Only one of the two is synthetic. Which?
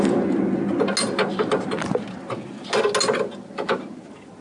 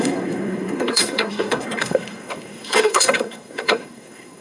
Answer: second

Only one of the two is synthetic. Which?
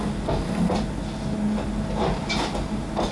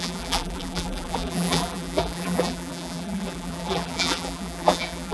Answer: second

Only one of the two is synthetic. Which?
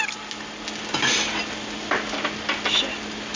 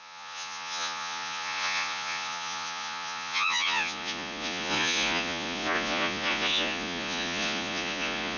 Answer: second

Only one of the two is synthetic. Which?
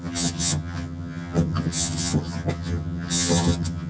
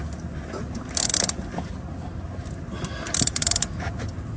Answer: first